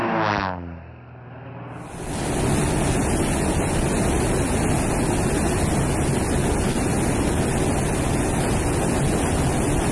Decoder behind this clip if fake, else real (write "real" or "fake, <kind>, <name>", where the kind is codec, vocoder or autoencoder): real